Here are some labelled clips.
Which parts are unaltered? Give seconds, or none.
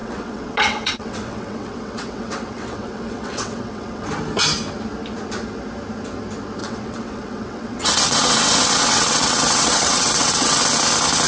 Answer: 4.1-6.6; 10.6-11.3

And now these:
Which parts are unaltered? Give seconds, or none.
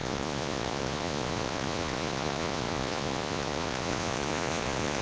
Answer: none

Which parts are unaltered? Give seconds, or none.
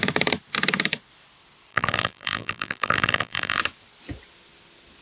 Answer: 0.0-1.7; 3.6-5.0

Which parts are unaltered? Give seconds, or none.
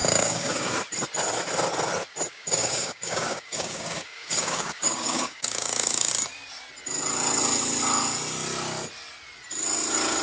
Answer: 0.7-2.3; 6.1-10.2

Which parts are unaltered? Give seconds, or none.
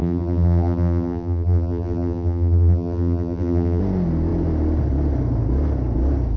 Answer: 3.8-6.4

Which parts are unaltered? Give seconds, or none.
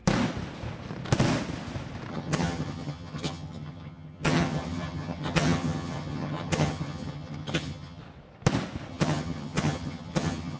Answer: 0.0-2.1; 8.0-8.9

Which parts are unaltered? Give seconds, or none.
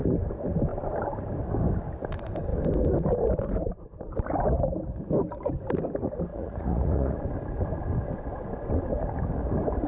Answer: 0.0-6.3; 7.2-9.9